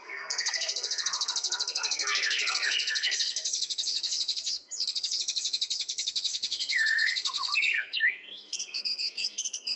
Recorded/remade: remade